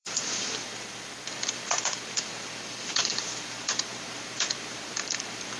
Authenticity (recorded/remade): remade